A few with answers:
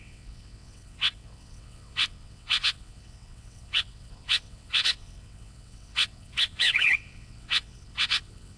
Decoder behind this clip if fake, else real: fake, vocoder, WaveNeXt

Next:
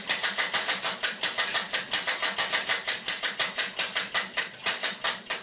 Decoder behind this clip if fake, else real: real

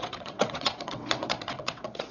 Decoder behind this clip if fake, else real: fake, vocoder, WaveNeXt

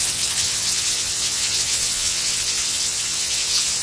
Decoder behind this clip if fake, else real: fake, vocoder, WaveNeXt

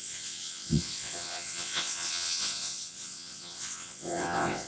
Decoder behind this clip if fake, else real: fake, vocoder, WaveNeXt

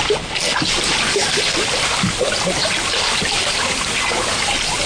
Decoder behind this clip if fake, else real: real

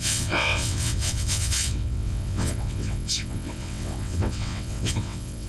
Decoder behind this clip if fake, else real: fake, vocoder, WaveNeXt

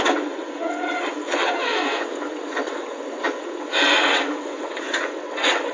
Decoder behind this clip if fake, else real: fake, vocoder, WaveNeXt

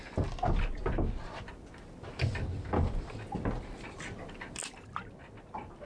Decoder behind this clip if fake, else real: real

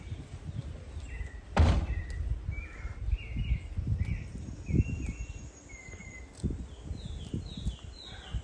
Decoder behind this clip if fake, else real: real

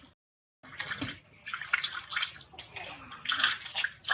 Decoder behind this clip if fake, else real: real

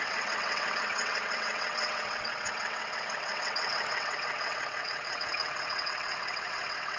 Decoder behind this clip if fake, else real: fake, vocoder, WaveNeXt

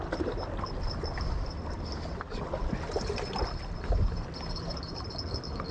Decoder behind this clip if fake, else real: real